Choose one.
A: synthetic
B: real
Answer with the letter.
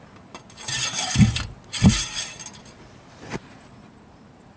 B